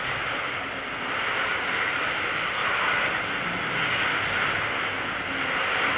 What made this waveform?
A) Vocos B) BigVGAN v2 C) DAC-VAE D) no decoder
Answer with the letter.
D